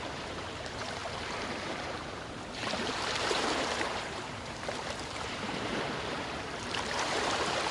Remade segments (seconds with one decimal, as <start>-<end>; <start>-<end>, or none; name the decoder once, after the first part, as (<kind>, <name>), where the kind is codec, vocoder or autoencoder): 0.0-1.0 (vocoder, BigVGAN v2); 1.5-7.7

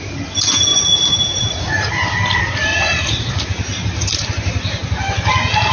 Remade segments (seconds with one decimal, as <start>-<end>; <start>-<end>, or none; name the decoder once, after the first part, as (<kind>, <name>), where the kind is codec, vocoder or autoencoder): 0.7-1.9 (vocoder, Vocos); 2.7-3.4

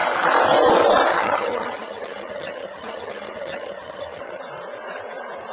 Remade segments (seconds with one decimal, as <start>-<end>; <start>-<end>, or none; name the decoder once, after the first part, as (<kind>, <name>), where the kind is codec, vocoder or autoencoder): 1.1-4.4 (vocoder, HiFi-GAN)

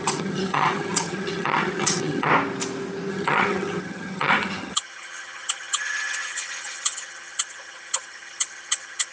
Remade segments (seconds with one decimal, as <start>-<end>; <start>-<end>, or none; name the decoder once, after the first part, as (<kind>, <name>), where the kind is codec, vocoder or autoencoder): 0.0-2.3 (vocoder, HiFi-GAN); 3.1-9.1